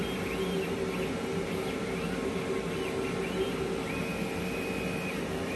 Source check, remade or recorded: recorded